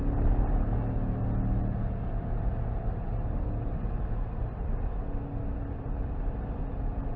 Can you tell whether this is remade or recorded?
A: recorded